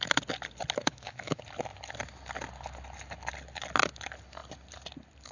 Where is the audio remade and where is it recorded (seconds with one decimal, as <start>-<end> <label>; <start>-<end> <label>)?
0.0-0.8 recorded; 0.8-1.4 remade; 1.4-5.3 recorded